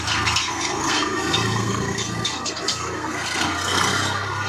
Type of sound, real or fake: fake